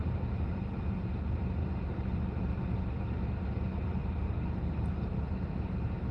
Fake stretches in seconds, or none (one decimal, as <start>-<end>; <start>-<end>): 0.0-0.8; 1.6-3.4; 4.0-4.9